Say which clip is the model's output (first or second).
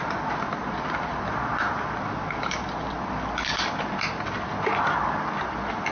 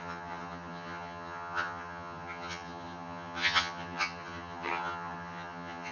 second